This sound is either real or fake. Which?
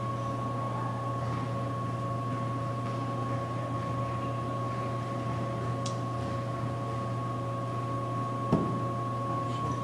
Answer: real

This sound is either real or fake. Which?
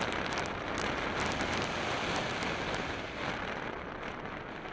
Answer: real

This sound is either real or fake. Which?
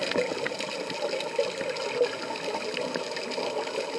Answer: real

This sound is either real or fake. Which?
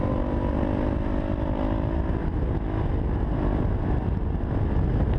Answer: real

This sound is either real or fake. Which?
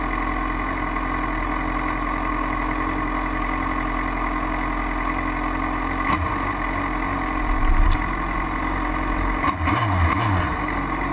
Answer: real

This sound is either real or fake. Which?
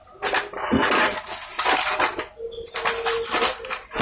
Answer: real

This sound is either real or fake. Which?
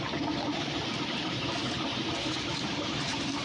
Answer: real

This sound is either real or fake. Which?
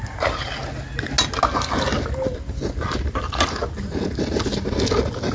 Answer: real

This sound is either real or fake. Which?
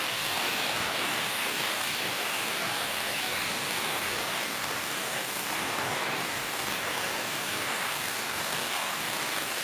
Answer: fake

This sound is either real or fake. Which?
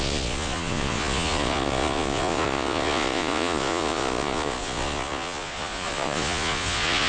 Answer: fake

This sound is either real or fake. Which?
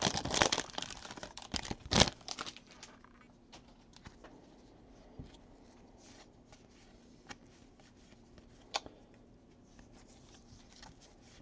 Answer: fake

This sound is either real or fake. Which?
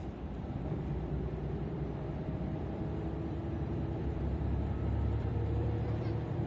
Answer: fake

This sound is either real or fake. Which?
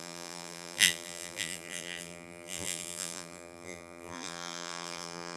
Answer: fake